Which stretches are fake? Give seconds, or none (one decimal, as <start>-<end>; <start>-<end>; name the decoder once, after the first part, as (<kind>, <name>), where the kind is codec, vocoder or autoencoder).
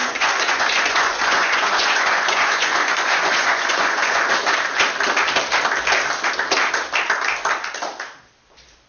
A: 0.0-4.3 (vocoder, Vocos)